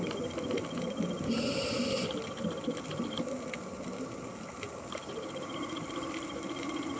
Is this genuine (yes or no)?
yes